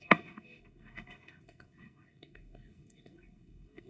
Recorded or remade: remade